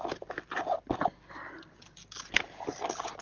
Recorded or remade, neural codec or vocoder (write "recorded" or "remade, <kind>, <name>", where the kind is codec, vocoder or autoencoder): recorded